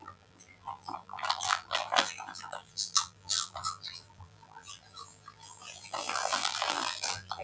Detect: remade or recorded remade